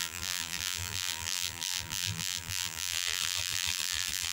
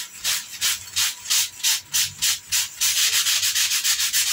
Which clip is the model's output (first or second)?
first